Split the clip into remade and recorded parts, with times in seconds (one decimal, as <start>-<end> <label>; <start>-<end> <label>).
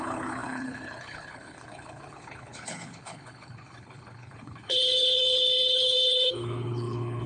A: 0.0-7.3 remade